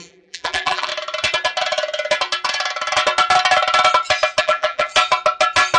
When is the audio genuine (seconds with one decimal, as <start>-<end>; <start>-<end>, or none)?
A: 0.9-4.4; 4.9-5.8